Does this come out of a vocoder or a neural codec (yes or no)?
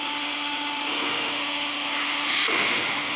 yes